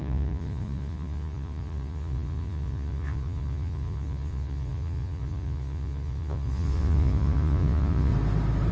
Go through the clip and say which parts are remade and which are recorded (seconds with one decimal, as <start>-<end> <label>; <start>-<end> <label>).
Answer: 0.0-8.1 remade; 8.1-8.7 recorded